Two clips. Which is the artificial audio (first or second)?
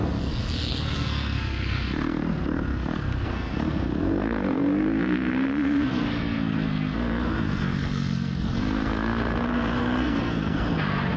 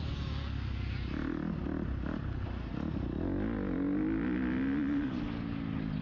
first